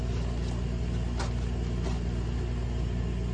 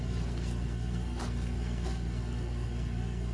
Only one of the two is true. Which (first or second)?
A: first